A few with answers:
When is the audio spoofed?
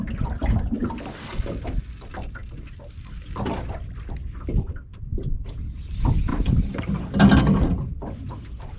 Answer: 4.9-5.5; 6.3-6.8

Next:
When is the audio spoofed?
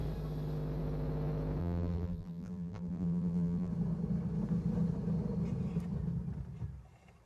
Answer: 1.6-3.7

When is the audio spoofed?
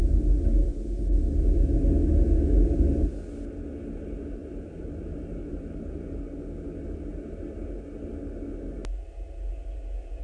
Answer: 4.4-6.4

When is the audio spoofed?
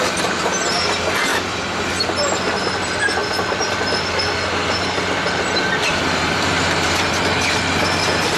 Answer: 1.3-1.9; 5.8-7.1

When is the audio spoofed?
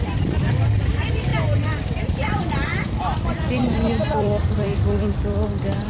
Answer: 0.0-1.3; 2.0-5.9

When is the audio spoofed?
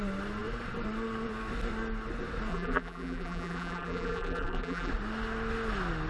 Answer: 2.5-4.9